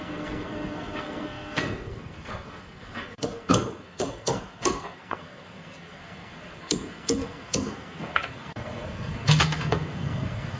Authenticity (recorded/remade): remade